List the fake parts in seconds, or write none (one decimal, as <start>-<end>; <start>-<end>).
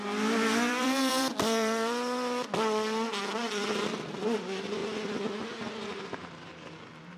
0.0-4.8; 6.1-7.2